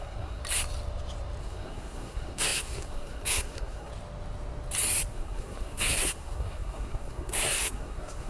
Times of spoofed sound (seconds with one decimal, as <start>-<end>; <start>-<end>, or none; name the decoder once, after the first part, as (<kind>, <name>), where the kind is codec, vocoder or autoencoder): 0.0-0.4 (codec, SNAC); 1.4-3.9; 5.1-8.3